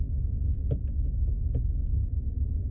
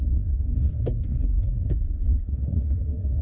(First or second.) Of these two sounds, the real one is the first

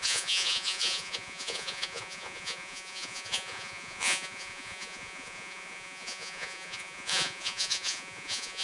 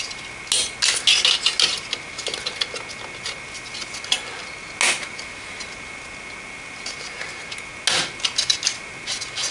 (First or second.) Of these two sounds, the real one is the second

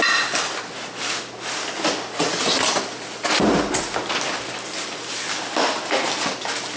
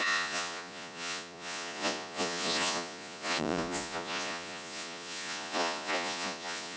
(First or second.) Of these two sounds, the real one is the first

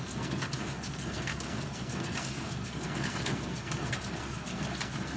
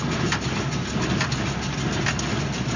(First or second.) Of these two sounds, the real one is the second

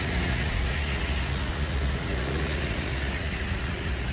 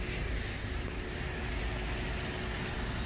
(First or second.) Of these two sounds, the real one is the second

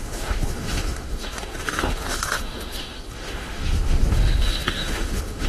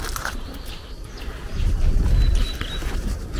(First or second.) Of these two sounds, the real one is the second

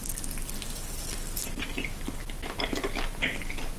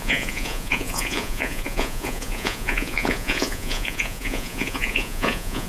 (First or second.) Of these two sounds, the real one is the first